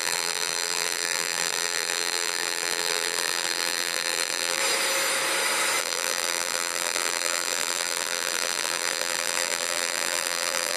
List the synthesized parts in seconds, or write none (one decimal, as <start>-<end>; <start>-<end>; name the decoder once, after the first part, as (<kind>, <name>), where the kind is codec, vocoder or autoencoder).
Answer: 0.0-4.6 (vocoder, BigVGAN v2); 5.8-10.8